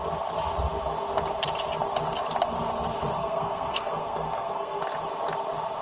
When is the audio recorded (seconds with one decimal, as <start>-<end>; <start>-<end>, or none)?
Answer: 0.0-3.2; 4.8-5.8